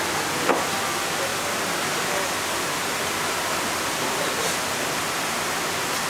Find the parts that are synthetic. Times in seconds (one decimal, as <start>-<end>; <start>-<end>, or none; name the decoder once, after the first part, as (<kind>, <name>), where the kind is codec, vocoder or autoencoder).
1.3-5.0 (vocoder, BigVGAN v2)